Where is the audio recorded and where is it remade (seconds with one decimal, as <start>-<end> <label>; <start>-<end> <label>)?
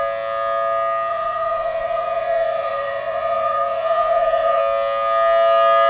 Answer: 0.0-1.1 recorded; 1.1-4.6 remade; 4.6-5.9 recorded